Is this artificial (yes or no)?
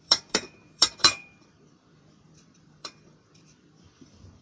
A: yes